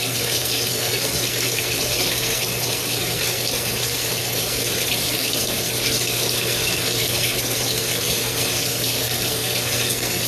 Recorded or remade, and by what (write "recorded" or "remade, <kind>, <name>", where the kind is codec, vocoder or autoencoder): remade, codec, SNAC